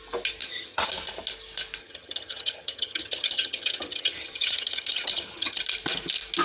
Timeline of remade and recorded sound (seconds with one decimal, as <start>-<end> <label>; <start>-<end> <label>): 0.0-0.4 recorded; 0.4-0.9 remade; 0.9-1.8 recorded; 1.8-5.6 remade; 5.6-6.4 recorded